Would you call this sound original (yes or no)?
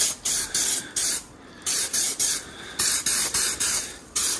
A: no